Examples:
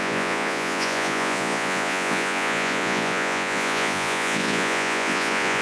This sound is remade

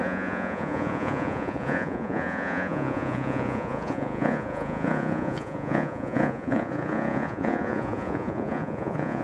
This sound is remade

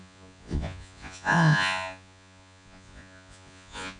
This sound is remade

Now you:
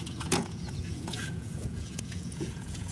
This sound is remade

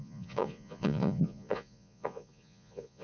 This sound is remade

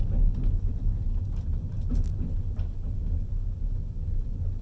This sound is recorded